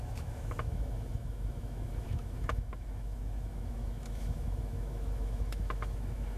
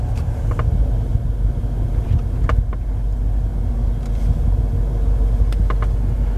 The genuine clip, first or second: second